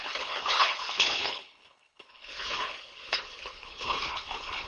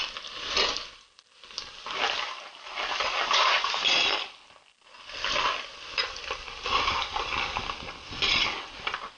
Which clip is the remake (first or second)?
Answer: first